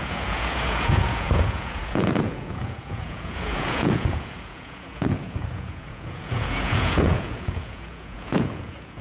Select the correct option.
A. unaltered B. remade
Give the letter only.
B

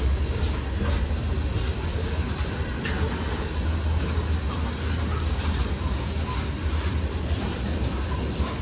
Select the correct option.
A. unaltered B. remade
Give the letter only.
A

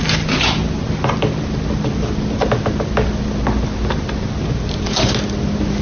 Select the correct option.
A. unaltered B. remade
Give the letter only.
A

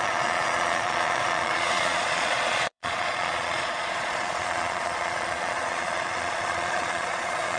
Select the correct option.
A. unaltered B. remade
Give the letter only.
B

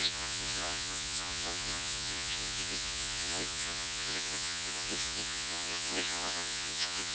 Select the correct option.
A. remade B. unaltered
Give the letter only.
A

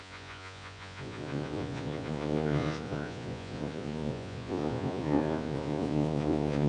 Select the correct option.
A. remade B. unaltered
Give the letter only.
A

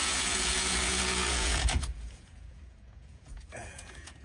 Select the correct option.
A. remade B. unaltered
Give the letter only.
A